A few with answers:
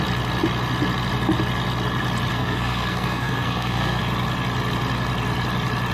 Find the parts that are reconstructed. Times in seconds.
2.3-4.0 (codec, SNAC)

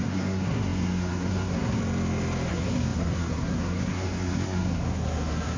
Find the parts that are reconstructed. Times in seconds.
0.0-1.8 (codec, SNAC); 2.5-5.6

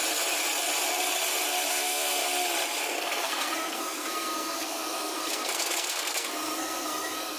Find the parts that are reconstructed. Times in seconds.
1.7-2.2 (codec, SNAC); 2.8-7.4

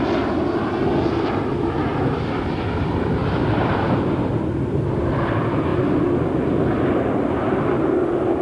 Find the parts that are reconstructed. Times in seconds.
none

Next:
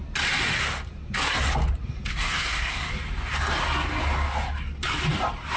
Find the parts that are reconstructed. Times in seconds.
2.1-2.9 (codec, SNAC)

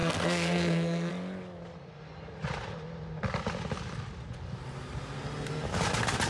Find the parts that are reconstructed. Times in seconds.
0.0-1.1 (codec, SNAC)

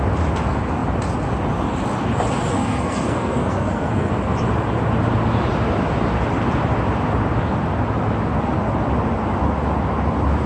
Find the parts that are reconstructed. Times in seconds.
2.5-4.1 (codec, SNAC)